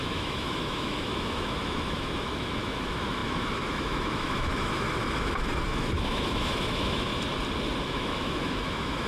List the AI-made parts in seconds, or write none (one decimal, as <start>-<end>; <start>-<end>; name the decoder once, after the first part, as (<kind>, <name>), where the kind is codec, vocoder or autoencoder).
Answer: 0.0-7.1 (autoencoder, DAC-VAE); 7.8-9.1